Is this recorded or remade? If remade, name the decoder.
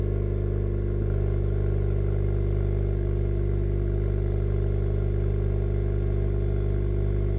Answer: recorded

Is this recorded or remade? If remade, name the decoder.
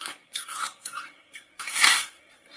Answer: remade, codec, SNAC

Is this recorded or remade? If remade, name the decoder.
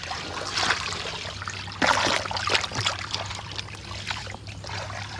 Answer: recorded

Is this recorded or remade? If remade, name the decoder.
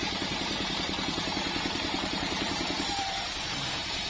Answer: remade, vocoder, BigVGAN v2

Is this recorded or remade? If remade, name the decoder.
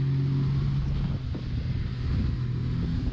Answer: recorded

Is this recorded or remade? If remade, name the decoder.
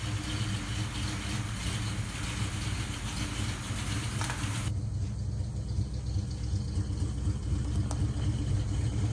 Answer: recorded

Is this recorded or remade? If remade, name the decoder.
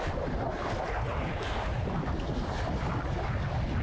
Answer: recorded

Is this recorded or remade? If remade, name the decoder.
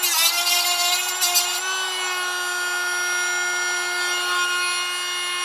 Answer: recorded